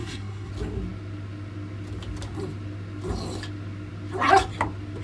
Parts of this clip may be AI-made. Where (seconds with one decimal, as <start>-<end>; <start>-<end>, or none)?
0.0-0.5